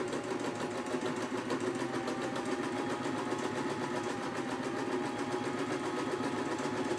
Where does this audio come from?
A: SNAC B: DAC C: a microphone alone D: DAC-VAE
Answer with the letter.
C